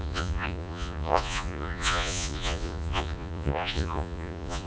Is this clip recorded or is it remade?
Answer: remade